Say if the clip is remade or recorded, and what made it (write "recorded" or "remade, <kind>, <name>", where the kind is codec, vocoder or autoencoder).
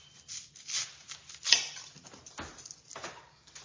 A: recorded